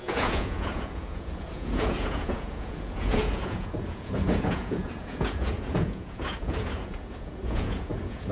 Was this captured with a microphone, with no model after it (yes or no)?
no